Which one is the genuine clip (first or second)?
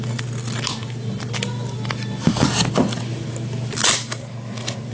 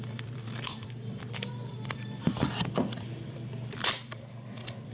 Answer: first